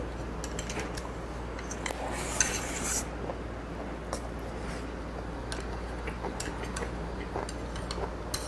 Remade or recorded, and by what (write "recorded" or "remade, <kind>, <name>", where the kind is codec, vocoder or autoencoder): recorded